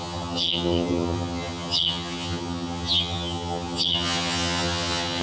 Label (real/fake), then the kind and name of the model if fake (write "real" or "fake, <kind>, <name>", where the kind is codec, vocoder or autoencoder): fake, vocoder, HiFi-GAN